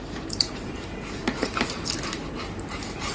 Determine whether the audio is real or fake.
fake